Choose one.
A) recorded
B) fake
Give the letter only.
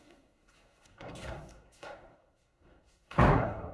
B